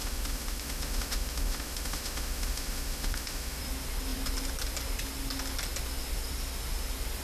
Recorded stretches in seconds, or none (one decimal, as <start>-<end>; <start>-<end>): 3.6-7.2